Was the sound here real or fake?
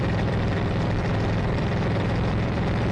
fake